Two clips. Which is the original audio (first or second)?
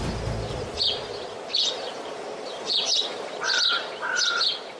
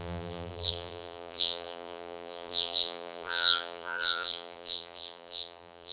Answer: first